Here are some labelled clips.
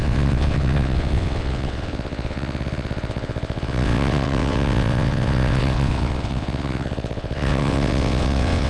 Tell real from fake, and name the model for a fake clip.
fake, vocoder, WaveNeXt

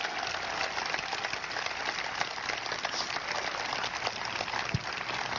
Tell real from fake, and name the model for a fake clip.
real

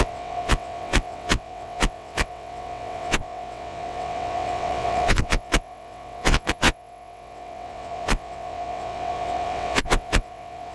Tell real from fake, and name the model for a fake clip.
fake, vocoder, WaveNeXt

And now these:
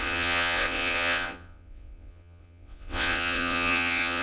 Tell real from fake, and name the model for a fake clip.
fake, vocoder, WaveNeXt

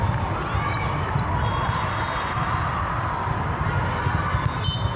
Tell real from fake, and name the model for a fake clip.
real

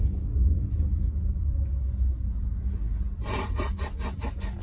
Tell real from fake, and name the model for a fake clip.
real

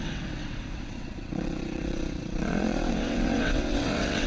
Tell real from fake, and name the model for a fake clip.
fake, vocoder, WaveNeXt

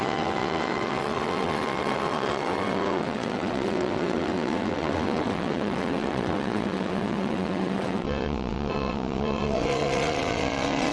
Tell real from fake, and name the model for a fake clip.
fake, vocoder, WaveNeXt